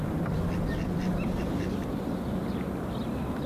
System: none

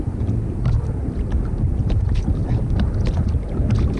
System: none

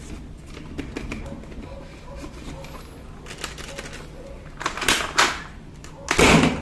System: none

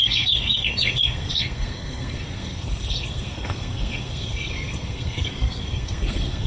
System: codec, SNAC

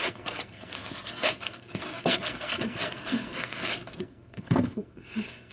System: codec, SNAC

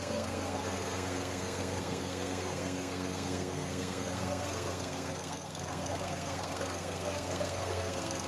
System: codec, SNAC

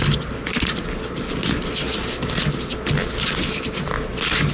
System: none